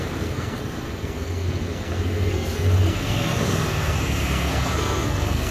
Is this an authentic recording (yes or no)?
no